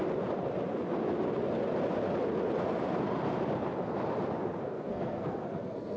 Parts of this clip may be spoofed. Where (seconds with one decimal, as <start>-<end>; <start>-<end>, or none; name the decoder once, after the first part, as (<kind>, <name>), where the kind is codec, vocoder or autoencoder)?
4.6-6.0 (codec, SNAC)